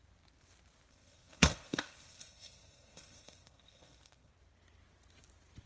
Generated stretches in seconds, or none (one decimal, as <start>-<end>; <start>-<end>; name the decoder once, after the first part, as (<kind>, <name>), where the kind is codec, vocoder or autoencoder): 0.9-4.3 (codec, SNAC)